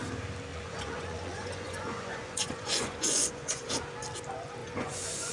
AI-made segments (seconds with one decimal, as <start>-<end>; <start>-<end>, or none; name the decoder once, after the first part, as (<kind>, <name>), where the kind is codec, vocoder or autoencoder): 0.5-3.7 (vocoder, Vocos); 4.6-5.3